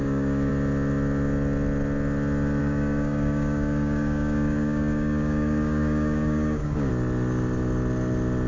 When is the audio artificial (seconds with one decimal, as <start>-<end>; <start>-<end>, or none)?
0.0-0.5; 2.6-6.9